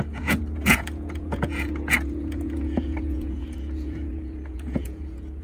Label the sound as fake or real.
fake